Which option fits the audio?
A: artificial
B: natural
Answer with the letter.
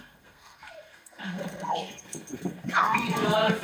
A